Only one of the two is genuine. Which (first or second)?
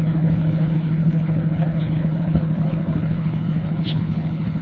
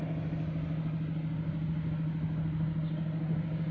second